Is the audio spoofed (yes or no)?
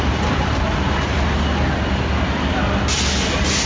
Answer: no